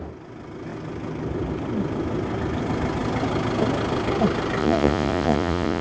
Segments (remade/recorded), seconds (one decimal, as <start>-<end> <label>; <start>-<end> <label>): 0.0-4.6 recorded; 4.6-5.8 remade